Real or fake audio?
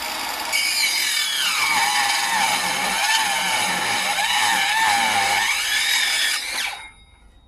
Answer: real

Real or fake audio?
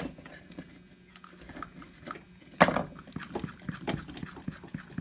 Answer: real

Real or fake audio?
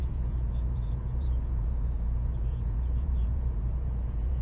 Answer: fake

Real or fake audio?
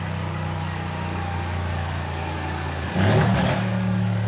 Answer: fake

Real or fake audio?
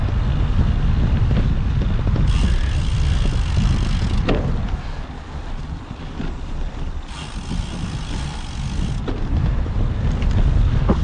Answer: real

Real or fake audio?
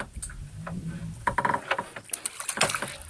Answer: real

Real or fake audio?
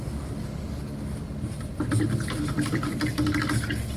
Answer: real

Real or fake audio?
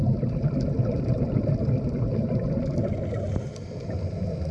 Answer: real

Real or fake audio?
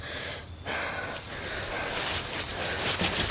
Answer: real